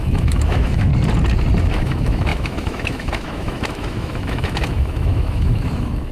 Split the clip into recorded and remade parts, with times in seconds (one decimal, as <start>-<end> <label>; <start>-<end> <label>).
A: 0.0-0.9 remade; 0.9-1.6 recorded; 1.6-6.1 remade